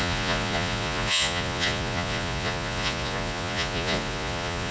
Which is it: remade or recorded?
remade